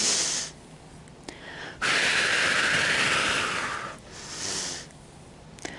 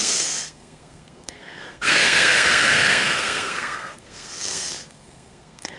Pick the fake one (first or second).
second